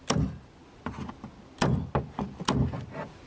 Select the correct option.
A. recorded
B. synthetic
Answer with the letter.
A